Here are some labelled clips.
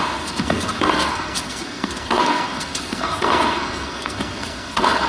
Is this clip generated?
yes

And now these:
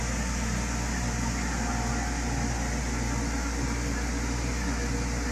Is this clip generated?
no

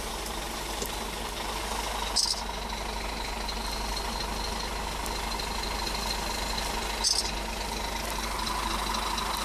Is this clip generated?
no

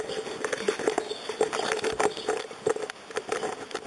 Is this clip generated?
no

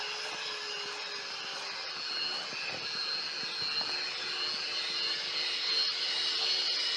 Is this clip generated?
no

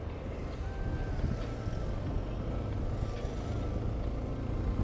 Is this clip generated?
no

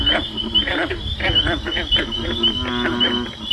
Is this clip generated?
no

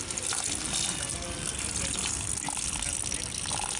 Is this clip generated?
no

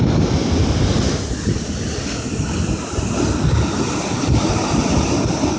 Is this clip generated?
no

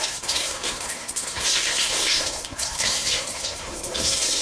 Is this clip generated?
yes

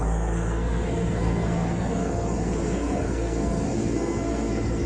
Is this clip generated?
yes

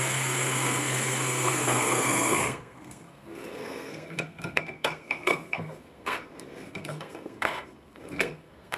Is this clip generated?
yes